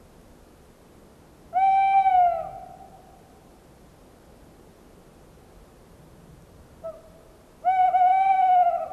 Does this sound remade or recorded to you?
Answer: recorded